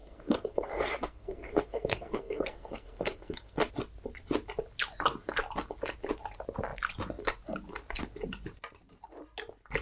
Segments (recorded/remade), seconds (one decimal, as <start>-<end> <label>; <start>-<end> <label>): 0.0-3.7 remade; 3.7-9.8 recorded